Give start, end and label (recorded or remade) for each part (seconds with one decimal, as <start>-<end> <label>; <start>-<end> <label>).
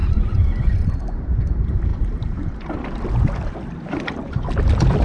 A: 0.0-1.2 remade; 1.2-5.0 recorded